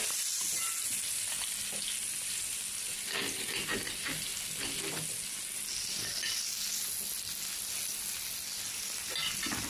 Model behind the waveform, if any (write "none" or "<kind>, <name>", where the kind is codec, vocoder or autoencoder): none